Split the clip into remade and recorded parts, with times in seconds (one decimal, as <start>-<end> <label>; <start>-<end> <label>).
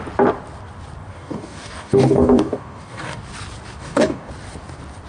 0.0-1.1 recorded; 1.1-3.2 remade; 3.2-3.8 recorded; 3.8-4.3 remade; 4.3-5.1 recorded